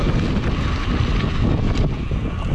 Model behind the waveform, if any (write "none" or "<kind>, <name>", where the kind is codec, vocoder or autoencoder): none